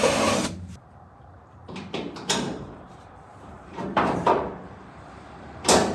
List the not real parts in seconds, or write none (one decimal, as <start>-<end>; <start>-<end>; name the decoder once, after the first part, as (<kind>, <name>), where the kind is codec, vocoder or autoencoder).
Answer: 0.0-5.9 (vocoder, BigVGAN v2)